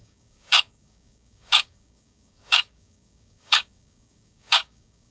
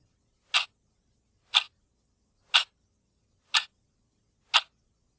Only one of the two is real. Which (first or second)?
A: second